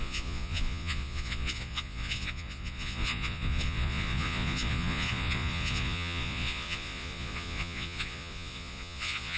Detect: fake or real fake